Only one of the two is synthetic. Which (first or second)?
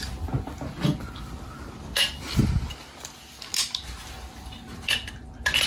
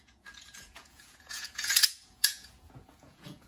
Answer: second